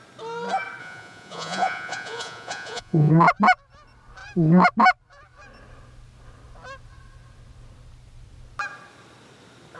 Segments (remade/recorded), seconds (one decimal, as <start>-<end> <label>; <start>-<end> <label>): 0.0-0.8 recorded; 0.8-3.1 remade; 3.1-9.8 recorded